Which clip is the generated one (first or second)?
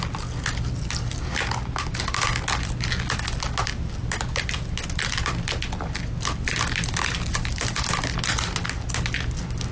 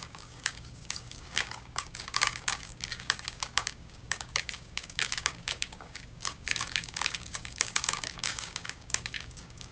second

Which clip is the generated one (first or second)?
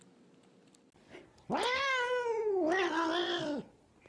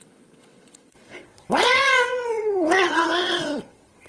second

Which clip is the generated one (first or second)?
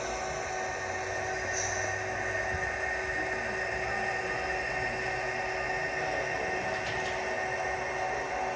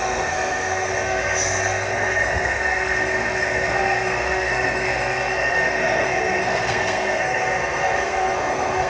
second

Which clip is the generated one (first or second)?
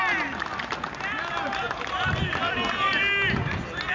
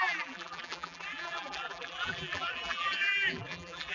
second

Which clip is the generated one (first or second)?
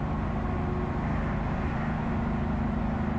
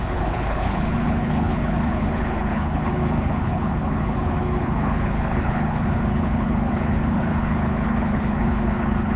second